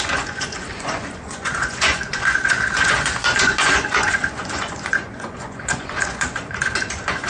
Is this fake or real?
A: fake